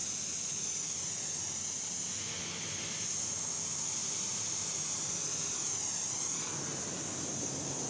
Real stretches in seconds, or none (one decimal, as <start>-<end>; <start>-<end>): 0.0-4.0; 5.1-7.9